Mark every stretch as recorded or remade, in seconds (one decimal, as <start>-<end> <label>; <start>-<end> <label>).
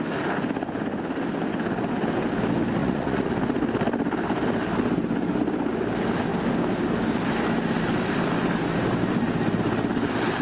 0.0-2.8 recorded; 2.8-3.3 remade; 3.3-10.4 recorded